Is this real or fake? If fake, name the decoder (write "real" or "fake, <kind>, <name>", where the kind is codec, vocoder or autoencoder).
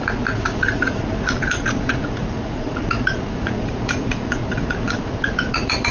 fake, vocoder, Vocos